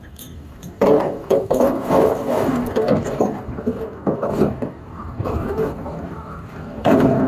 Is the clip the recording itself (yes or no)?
no